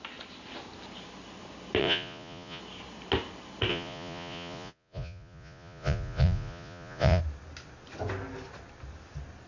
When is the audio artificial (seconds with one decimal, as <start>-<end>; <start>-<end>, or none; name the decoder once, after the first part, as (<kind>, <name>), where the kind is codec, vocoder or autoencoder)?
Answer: 1.8-2.6 (vocoder, Vocos); 3.7-7.2